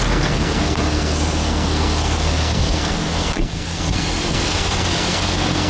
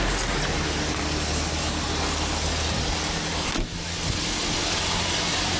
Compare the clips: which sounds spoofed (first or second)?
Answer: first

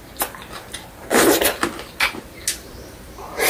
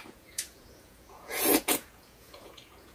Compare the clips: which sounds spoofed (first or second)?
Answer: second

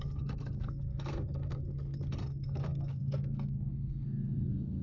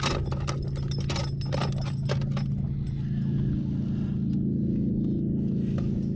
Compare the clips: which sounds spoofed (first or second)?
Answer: first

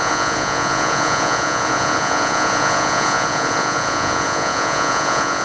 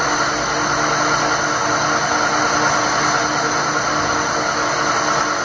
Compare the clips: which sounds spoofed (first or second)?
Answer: first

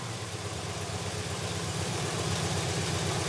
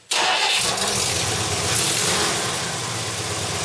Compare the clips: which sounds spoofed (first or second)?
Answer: first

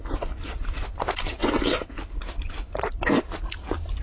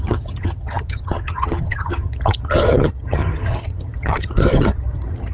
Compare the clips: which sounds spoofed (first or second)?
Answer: second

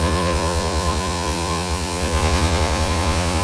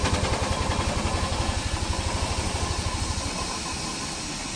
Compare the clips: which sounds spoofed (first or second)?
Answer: first